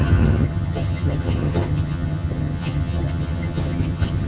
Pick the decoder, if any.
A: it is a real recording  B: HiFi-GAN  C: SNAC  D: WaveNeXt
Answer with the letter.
B